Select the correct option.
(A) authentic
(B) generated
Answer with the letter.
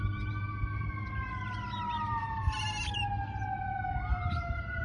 A